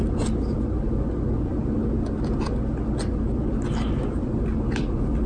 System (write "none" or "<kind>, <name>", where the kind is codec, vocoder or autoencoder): none